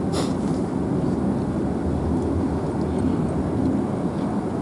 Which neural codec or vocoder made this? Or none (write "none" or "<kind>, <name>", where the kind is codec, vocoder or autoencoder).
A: none